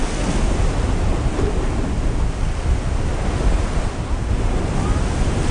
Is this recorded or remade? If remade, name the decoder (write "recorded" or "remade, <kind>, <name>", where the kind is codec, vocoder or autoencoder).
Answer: recorded